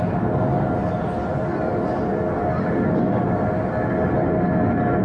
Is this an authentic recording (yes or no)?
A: yes